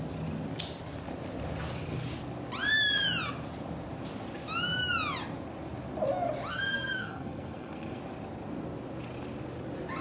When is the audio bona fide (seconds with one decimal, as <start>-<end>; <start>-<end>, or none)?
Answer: 0.0-6.5; 8.0-10.0